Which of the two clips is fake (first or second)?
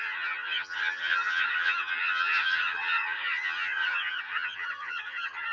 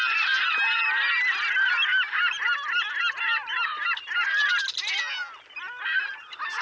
first